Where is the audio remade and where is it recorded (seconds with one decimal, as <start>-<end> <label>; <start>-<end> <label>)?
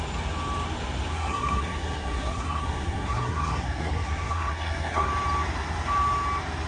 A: 0.0-1.1 recorded; 1.1-5.1 remade; 5.1-6.7 recorded